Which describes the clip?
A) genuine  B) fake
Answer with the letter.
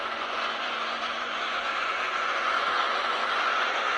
B